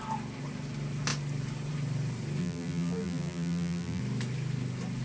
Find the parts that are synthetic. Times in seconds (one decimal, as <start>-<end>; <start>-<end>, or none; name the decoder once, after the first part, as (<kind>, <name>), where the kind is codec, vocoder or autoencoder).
2.4-4.0 (vocoder, BigVGAN v2)